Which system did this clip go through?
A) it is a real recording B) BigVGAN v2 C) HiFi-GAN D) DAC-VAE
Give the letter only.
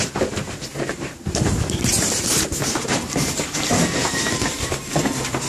B